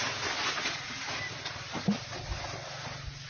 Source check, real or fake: real